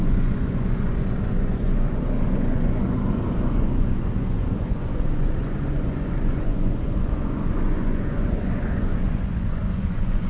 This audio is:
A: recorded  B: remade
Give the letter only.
B